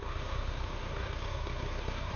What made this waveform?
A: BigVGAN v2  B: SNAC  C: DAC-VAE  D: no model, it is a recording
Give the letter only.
B